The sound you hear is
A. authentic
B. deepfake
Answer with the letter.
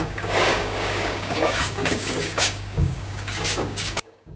B